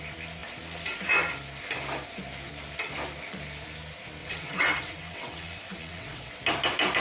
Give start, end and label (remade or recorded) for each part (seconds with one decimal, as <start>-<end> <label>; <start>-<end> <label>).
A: 0.0-4.2 recorded; 4.2-6.3 remade; 6.3-7.0 recorded

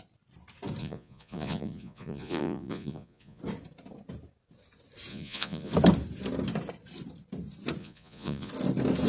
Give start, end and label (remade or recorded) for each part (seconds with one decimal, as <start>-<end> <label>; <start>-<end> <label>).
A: 0.0-0.8 recorded; 0.8-3.4 remade; 3.4-5.1 recorded; 5.1-5.7 remade; 5.7-7.8 recorded; 7.8-8.5 remade; 8.5-9.1 recorded

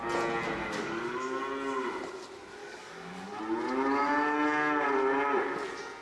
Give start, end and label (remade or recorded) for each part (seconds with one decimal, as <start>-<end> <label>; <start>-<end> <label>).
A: 0.0-0.6 recorded; 0.6-1.4 remade; 1.4-2.6 recorded; 2.6-3.4 remade; 3.4-6.0 recorded

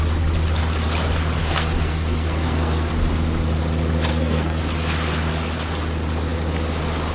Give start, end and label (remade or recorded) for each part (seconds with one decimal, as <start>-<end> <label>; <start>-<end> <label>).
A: 0.0-1.4 recorded; 1.4-2.9 remade; 2.9-4.1 recorded; 4.1-4.6 remade; 4.6-7.1 recorded

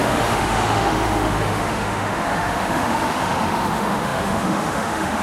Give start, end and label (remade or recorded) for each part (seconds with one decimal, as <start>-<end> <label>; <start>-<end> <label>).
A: 0.0-5.2 remade

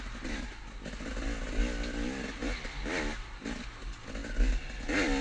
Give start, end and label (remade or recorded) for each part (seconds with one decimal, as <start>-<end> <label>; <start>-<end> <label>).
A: 0.0-5.2 recorded

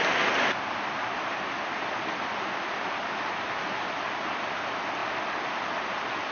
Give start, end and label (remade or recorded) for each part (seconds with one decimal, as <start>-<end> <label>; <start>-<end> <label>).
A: 0.0-6.3 recorded